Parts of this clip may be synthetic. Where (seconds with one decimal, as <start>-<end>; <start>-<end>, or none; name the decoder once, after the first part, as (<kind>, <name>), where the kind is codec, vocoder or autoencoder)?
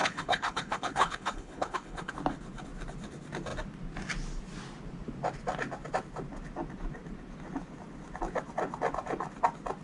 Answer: 0.0-2.1 (codec, HILCodec)